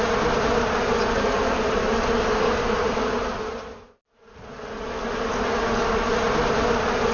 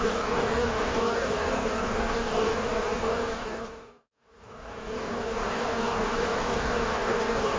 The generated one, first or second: second